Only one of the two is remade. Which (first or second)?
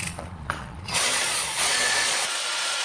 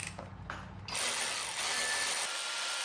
first